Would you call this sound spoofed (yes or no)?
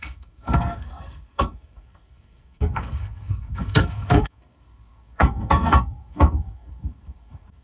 yes